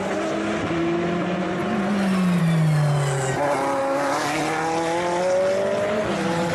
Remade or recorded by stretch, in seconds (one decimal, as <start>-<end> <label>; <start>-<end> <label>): 0.0-3.8 recorded; 3.8-4.4 remade; 4.4-6.5 recorded